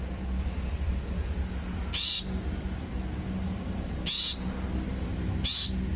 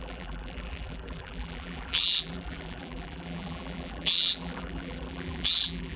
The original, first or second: first